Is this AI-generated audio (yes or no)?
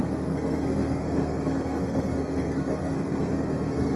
yes